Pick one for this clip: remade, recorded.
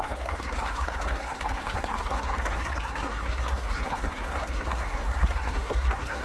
remade